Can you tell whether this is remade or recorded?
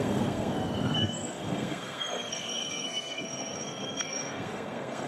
remade